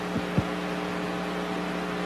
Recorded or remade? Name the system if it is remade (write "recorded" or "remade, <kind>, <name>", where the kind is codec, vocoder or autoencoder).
recorded